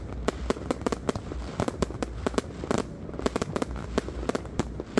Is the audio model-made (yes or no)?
no